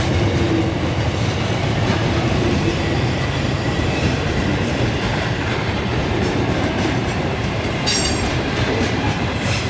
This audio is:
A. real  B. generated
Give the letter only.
B